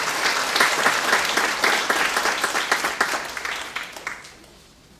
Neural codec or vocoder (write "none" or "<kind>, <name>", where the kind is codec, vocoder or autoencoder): none